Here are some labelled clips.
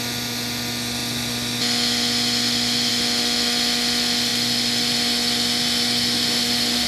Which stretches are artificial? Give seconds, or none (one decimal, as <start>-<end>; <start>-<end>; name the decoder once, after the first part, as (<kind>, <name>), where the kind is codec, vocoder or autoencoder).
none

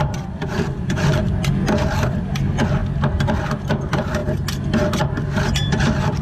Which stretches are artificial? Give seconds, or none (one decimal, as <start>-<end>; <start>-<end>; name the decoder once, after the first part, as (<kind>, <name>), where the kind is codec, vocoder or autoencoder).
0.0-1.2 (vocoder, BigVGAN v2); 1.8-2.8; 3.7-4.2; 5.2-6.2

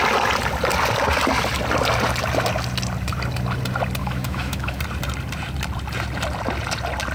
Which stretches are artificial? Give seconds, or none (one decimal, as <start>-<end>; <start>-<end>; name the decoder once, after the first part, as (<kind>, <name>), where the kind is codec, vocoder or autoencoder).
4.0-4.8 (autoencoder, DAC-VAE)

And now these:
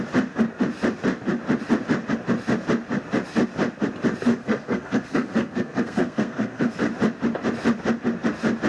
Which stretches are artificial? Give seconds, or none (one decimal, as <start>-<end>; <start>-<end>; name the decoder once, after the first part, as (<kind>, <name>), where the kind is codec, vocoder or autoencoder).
4.3-6.8 (codec, SNAC)

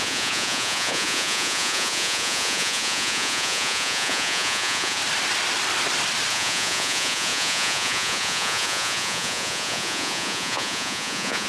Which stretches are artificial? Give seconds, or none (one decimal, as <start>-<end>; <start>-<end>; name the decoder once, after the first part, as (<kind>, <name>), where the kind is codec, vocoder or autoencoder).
0.0-5.0 (vocoder, Vocos); 6.3-11.5

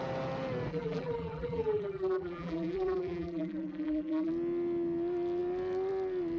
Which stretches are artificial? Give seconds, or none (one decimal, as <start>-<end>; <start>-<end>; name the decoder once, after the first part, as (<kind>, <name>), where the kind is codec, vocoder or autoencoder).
0.7-4.3 (vocoder, BigVGAN v2)

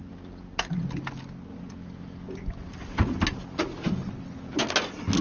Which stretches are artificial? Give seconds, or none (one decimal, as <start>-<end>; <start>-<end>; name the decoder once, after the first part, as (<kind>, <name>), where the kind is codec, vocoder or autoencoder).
none